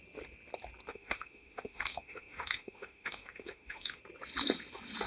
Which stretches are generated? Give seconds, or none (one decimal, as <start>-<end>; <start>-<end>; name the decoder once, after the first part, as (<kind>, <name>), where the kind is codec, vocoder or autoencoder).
0.9-4.0 (autoencoder, DAC-VAE)